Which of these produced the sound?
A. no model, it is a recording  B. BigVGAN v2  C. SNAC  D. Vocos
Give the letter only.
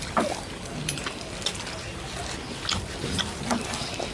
A